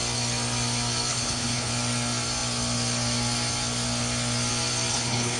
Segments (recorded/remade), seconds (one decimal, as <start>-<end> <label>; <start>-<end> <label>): 0.0-1.1 recorded; 1.1-1.7 remade; 1.7-4.9 recorded; 4.9-5.4 remade